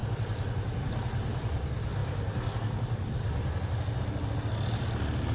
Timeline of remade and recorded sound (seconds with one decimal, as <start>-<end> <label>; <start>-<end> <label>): 0.0-5.3 recorded